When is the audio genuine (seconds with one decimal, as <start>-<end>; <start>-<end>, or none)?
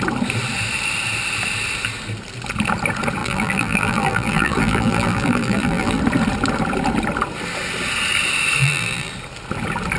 0.0-3.2; 6.0-8.6; 9.1-10.0